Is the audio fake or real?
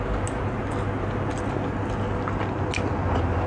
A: real